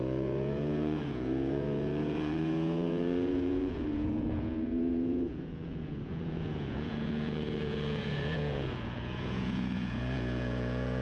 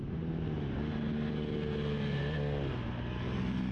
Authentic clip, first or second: second